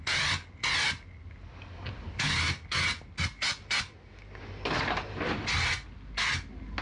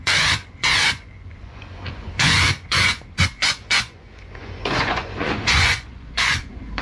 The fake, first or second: second